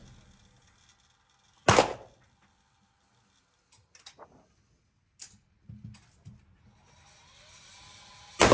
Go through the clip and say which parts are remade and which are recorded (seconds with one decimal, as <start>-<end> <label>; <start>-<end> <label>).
0.0-8.5 recorded